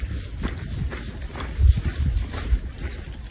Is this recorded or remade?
recorded